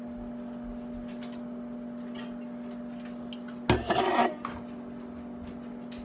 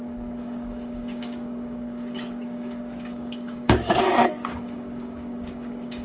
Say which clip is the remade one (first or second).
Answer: second